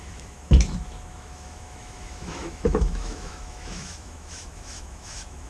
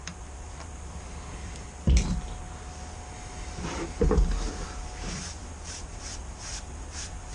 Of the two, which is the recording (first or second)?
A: second